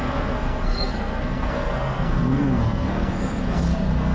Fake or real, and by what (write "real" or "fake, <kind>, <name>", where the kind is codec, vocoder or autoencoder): fake, codec, SNAC